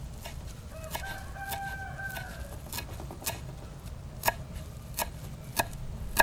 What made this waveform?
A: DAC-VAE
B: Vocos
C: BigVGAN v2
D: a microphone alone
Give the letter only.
D